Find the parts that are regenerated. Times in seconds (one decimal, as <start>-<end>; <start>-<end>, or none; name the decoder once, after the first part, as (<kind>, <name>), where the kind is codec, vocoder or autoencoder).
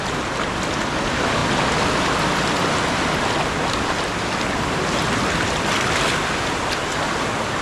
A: none